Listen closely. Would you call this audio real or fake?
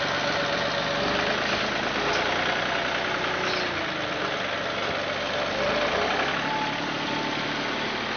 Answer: real